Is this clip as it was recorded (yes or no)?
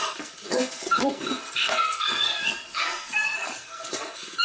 no